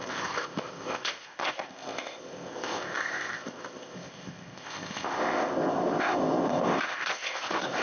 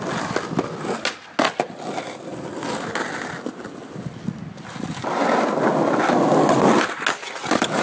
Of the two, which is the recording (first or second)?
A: second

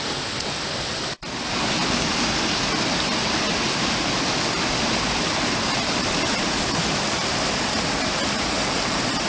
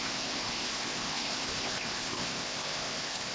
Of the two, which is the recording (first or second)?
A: first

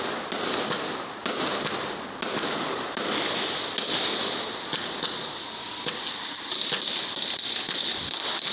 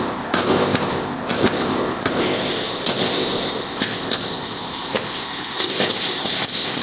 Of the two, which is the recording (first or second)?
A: first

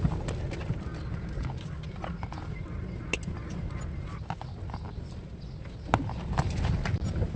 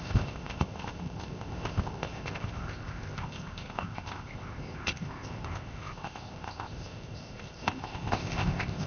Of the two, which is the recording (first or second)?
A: first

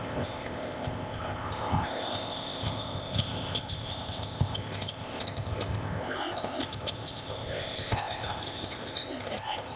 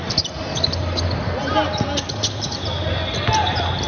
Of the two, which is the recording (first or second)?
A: second